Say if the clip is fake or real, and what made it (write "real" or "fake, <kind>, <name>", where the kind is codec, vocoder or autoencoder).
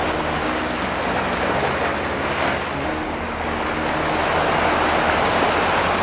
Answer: real